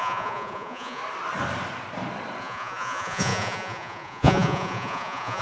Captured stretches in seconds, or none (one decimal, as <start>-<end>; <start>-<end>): 1.0-2.4